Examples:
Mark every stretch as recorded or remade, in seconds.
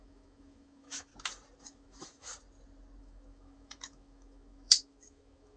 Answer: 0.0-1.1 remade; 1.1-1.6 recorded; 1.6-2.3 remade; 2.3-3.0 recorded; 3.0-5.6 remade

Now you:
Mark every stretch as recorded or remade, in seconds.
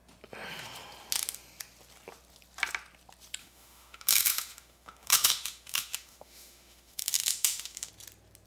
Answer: 0.0-3.4 recorded; 3.4-7.9 remade; 7.9-8.5 recorded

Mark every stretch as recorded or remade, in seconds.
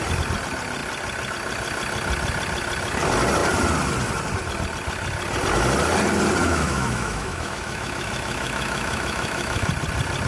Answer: 0.0-6.4 recorded; 6.4-9.7 remade; 9.7-10.3 recorded